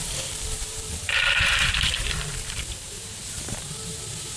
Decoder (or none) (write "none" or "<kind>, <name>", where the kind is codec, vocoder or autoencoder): vocoder, BigVGAN v2